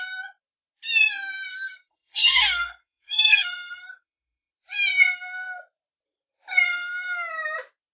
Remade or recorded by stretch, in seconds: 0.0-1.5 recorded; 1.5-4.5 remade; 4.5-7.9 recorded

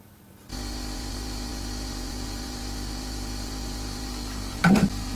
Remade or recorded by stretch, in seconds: 0.0-0.5 remade; 0.5-1.1 recorded; 1.1-5.2 remade

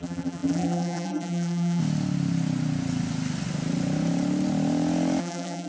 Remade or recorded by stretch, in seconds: 0.0-1.8 remade; 1.8-5.2 recorded; 5.2-5.7 remade

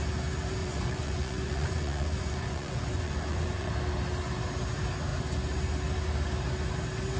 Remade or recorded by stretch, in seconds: 0.0-0.6 recorded; 0.6-3.7 remade; 3.7-7.2 recorded

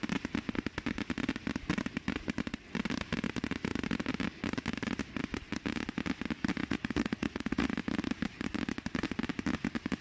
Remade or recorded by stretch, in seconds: 0.0-6.6 recorded; 6.6-7.7 remade; 7.7-10.0 recorded

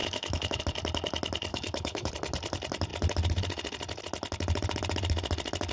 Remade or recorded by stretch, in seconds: 0.0-0.6 remade; 0.6-1.5 recorded; 1.5-2.1 remade; 2.1-5.7 recorded

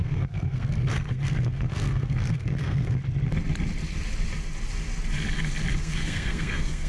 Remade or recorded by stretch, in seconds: 0.0-3.0 remade; 3.0-5.8 recorded; 5.8-6.9 remade